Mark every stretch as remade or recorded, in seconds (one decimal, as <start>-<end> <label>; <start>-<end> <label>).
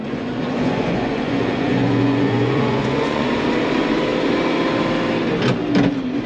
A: 0.0-3.4 remade; 3.4-6.3 recorded